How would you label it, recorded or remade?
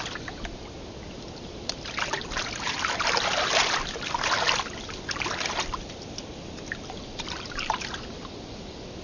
recorded